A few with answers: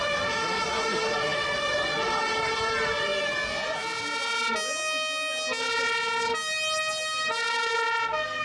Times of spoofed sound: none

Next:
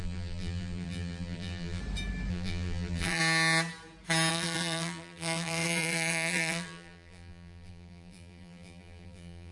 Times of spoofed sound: 0.0-1.8 (vocoder, BigVGAN v2); 2.3-3.2; 4.3-9.5

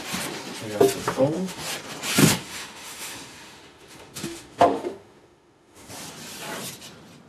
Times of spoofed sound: 1.0-1.6 (autoencoder, DAC-VAE); 2.2-5.9

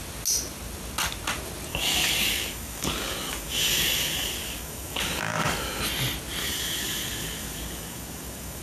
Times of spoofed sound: 1.7-5.8 (codec, DAC); 6.4-8.6